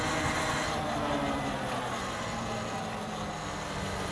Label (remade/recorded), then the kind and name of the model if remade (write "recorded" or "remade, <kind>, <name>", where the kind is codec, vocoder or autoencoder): recorded